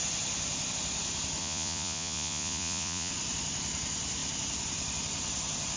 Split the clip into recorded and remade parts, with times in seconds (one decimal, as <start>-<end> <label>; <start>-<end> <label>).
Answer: 0.0-1.4 recorded; 1.4-3.1 remade; 3.1-5.8 recorded